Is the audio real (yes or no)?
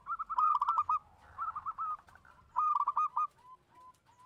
yes